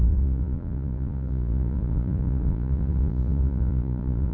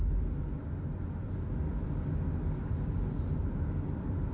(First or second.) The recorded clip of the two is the second